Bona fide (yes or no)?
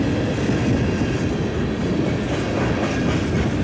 yes